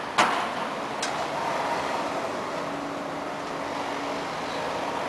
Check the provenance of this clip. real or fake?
real